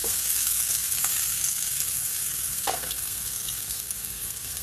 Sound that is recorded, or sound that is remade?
remade